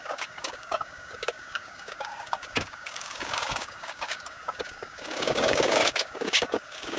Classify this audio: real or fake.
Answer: fake